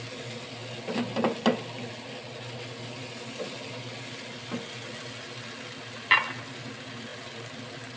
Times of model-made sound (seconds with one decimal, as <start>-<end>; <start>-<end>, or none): none